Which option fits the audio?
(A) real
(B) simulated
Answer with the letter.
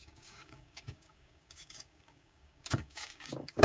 B